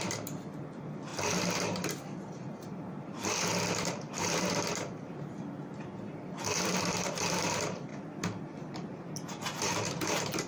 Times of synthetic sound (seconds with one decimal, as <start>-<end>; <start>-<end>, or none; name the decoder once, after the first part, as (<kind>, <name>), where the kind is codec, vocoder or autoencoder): 0.0-1.1 (vocoder, BigVGAN v2); 2.0-7.9; 8.4-10.5

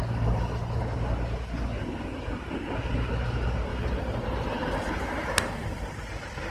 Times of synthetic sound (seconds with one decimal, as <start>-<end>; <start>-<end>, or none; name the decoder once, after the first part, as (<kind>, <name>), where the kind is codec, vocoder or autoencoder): 3.7-6.1 (vocoder, BigVGAN v2)